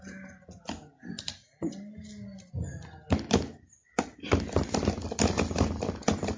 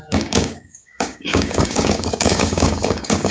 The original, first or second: first